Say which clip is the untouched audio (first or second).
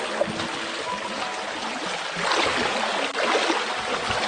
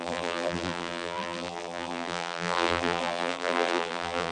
first